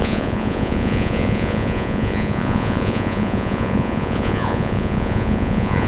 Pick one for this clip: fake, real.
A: fake